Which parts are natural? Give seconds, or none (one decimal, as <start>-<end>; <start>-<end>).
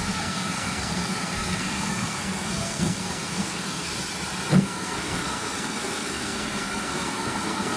3.9-4.5